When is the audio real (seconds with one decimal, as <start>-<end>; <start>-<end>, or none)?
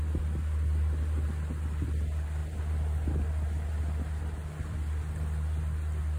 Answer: 0.0-6.2